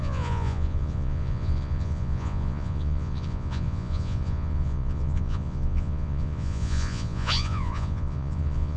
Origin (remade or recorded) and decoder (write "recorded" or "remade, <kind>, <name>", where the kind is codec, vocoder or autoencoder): remade, vocoder, Vocos